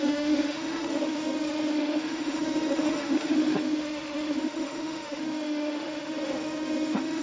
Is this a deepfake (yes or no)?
yes